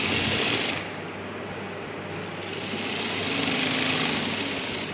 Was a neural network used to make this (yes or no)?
no